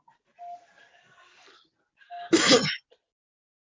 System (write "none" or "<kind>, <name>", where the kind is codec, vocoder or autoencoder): none